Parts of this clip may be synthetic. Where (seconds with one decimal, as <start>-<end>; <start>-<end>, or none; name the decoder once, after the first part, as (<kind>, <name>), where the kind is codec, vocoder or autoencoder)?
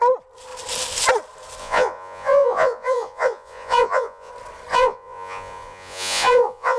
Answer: 1.6-4.3 (vocoder, Vocos); 4.7-6.8